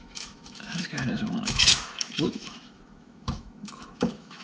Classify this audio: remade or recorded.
remade